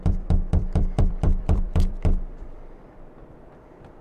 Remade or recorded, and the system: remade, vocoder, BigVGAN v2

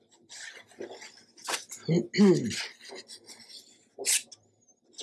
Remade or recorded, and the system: recorded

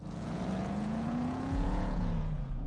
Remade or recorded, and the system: remade, vocoder, Vocos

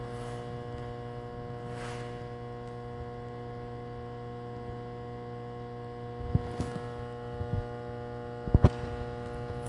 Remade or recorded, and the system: recorded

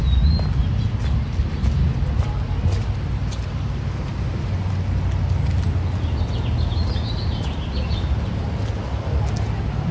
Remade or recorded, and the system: recorded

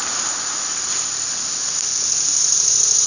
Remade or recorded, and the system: recorded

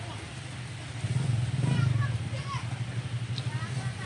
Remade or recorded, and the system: recorded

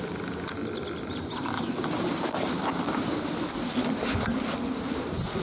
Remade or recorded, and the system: recorded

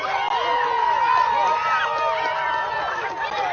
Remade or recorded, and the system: recorded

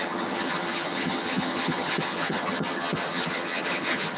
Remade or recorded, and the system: remade, vocoder, HiFi-GAN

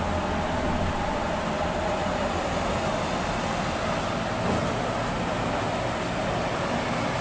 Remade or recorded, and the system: recorded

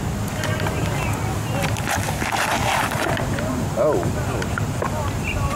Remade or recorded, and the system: recorded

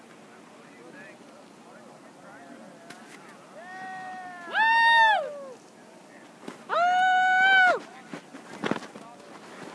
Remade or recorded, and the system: recorded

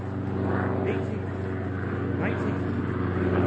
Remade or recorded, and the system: recorded